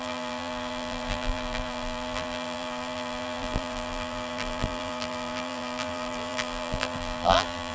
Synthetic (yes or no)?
yes